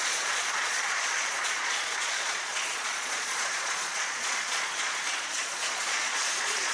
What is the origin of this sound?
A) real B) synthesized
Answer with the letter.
B